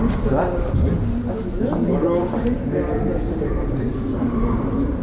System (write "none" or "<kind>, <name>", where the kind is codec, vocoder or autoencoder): none